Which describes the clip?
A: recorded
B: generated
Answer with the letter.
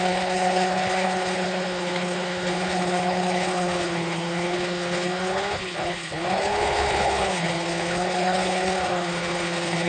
B